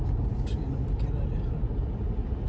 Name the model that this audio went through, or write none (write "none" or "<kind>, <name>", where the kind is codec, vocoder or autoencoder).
none